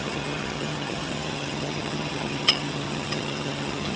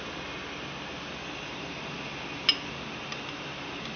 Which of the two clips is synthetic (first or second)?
first